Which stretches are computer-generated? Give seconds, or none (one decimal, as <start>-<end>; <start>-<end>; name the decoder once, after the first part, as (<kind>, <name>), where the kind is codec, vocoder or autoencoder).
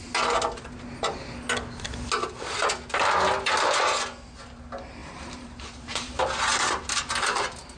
5.0-6.1 (vocoder, BigVGAN v2)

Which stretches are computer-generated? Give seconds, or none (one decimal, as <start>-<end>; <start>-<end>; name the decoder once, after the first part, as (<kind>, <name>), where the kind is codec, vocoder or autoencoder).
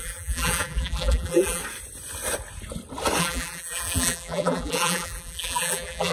0.0-1.6 (vocoder, BigVGAN v2); 3.2-6.1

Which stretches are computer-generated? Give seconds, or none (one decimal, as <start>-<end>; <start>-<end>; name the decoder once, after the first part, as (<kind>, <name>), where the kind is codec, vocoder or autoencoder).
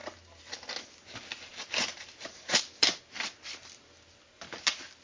1.5-3.0 (vocoder, BigVGAN v2)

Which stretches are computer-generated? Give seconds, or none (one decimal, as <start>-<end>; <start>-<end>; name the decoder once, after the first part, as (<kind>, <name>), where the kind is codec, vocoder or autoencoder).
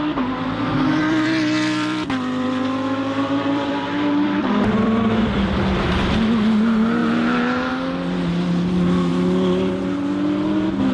1.0-5.9 (vocoder, BigVGAN v2); 9.1-9.7